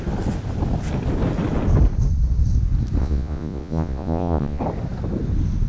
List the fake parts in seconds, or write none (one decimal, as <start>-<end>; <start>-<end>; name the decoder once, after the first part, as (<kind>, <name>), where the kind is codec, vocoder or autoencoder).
3.0-4.6 (vocoder, Vocos)